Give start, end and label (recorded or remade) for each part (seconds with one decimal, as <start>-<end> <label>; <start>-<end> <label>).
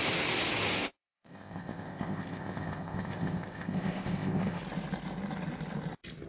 0.0-0.8 recorded; 0.8-4.6 remade; 4.6-6.3 recorded